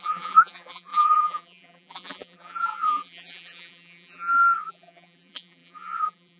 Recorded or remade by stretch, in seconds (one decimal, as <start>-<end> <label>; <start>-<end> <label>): 0.0-6.4 remade